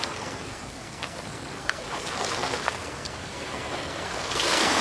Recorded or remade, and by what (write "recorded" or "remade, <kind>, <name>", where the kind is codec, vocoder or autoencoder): remade, codec, SNAC